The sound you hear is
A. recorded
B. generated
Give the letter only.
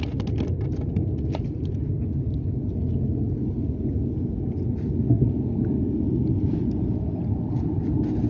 A